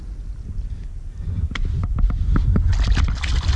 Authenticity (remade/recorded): recorded